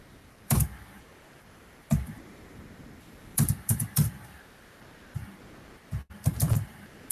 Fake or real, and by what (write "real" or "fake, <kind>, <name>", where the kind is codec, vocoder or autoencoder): fake, vocoder, BigVGAN v2